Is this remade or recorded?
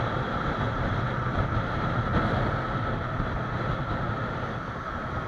recorded